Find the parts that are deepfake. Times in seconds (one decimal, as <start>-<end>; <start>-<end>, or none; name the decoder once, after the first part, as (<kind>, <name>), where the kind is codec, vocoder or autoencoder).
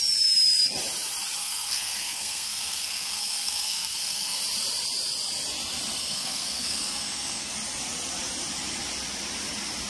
1.4-4.4 (codec, SNAC); 6.0-7.5